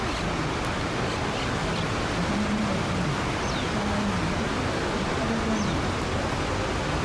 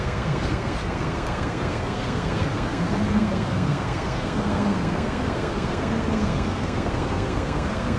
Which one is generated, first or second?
second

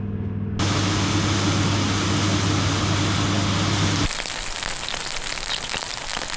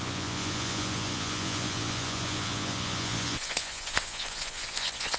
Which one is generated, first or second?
second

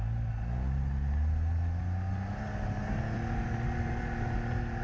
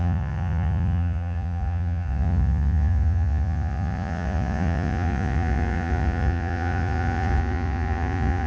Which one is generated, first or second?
second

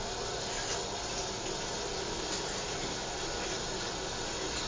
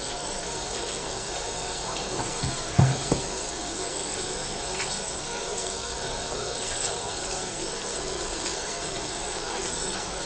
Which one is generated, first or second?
second